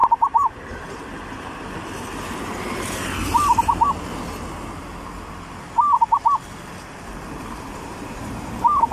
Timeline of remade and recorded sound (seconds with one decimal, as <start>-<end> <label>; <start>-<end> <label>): 0.0-0.9 remade; 0.9-7.7 recorded; 7.7-8.5 remade; 8.5-8.9 recorded